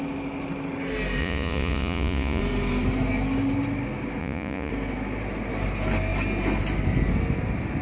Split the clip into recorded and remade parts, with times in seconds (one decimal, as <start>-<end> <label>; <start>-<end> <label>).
0.0-1.2 recorded; 1.2-2.4 remade; 2.4-4.2 recorded; 4.2-4.7 remade; 4.7-7.8 recorded